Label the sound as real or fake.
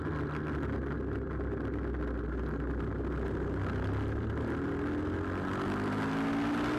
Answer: real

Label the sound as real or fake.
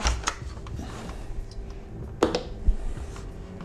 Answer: real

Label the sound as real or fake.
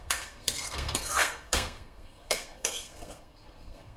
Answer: fake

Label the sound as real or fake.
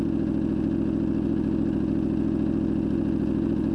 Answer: real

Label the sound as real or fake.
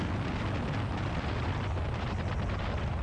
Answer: real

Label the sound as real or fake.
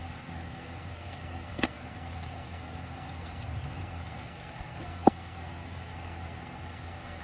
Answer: fake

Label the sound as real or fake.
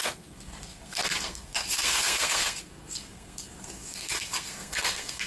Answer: fake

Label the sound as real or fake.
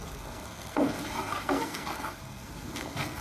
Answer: fake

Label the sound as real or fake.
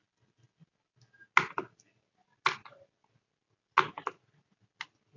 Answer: real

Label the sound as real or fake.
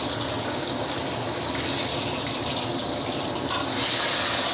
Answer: real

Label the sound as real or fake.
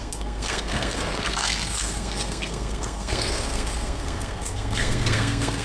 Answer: fake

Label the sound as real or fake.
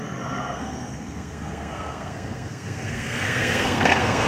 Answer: fake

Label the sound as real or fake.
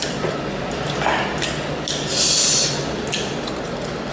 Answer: real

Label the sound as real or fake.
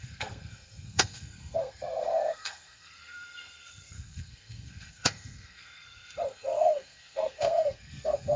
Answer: fake